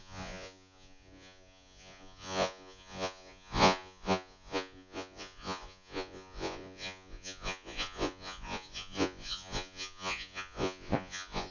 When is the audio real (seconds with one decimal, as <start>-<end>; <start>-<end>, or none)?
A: none